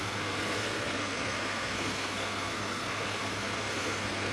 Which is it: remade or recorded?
remade